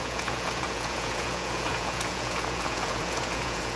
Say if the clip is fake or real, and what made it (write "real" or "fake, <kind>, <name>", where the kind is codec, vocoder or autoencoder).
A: fake, vocoder, Vocos